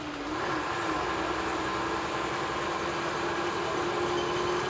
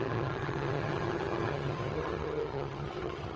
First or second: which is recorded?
first